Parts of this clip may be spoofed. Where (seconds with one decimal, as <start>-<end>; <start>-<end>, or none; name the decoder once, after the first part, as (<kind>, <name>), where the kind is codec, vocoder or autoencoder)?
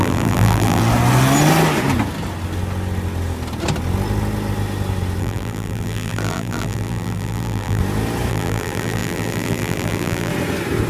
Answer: 0.0-0.8 (vocoder, BigVGAN v2); 5.2-7.8; 8.3-10.3